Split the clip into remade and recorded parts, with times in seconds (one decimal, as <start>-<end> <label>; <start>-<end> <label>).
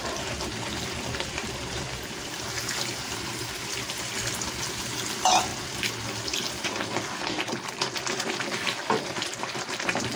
0.0-5.5 remade; 5.5-9.1 recorded; 9.1-10.2 remade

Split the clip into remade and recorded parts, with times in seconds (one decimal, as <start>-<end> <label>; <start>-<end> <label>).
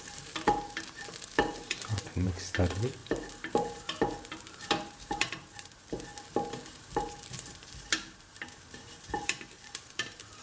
0.0-6.1 remade; 6.1-6.7 recorded; 6.7-10.4 remade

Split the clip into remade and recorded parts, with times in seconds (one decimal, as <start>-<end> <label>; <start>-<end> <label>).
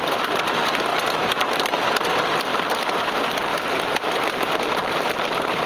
0.0-0.9 recorded; 0.9-1.8 remade; 1.8-2.5 recorded; 2.5-3.1 remade; 3.1-3.5 recorded; 3.5-4.6 remade; 4.6-5.7 recorded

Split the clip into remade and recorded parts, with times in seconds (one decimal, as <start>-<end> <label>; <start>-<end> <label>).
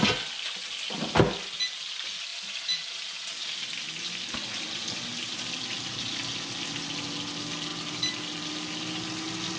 0.0-9.6 recorded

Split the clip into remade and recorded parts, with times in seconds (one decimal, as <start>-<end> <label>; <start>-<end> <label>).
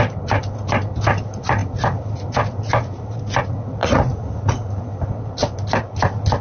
0.0-3.8 recorded; 3.8-4.7 remade; 4.7-6.4 recorded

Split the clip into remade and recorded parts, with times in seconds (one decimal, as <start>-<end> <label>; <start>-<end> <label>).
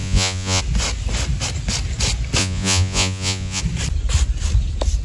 0.0-0.6 remade; 0.6-2.4 recorded; 2.4-3.6 remade; 3.6-5.0 recorded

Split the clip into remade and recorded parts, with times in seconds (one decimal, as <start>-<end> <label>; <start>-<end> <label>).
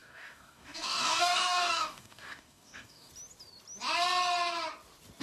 0.0-3.1 remade; 3.1-5.2 recorded